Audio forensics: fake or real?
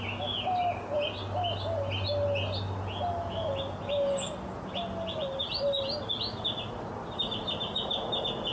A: real